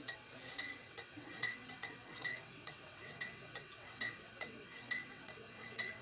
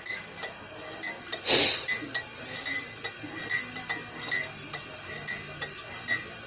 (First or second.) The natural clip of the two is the second